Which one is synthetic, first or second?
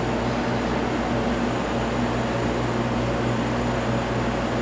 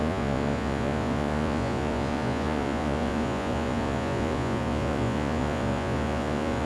second